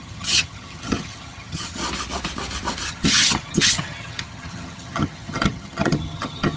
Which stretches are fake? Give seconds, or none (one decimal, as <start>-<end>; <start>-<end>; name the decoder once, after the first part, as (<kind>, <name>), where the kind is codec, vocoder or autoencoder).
0.0-1.8 (vocoder, HiFi-GAN); 2.9-6.6